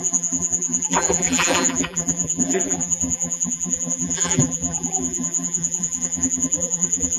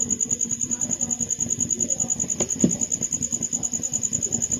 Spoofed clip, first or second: first